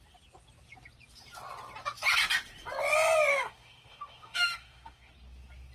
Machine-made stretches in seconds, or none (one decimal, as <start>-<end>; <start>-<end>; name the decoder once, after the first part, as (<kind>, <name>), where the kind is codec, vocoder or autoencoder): 3.3-5.1 (autoencoder, DAC-VAE)